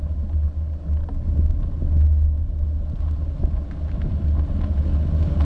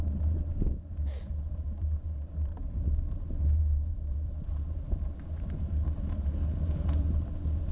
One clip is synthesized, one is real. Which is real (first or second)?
first